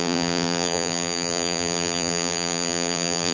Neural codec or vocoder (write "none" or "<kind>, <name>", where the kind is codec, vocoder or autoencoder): vocoder, BigVGAN v2